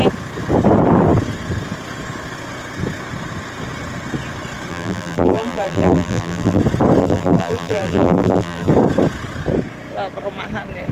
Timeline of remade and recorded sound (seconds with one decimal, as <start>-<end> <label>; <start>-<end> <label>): 0.0-4.7 recorded; 4.7-6.6 remade; 6.6-7.0 recorded; 7.0-8.7 remade; 8.7-10.9 recorded